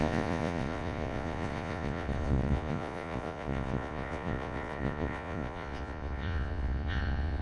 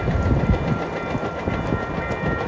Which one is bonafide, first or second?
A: second